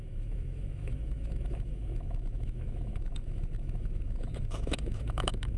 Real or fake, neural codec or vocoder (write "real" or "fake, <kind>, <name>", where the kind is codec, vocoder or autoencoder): fake, autoencoder, DAC-VAE